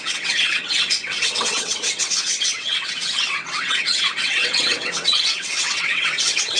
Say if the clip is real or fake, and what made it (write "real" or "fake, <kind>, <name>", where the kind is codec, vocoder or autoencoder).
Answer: fake, vocoder, WaveNeXt